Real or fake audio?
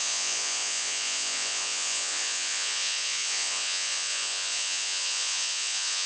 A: fake